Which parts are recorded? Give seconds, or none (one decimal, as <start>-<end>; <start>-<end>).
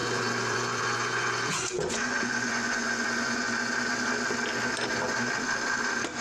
3.7-6.2